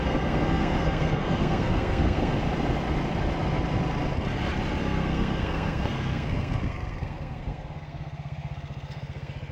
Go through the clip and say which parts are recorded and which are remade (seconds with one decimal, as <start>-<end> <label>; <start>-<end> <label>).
0.0-2.3 remade; 2.3-4.8 recorded; 4.8-9.5 remade